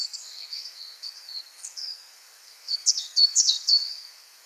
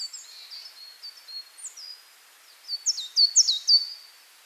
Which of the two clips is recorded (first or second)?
second